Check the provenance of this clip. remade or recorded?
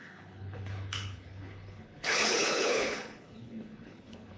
remade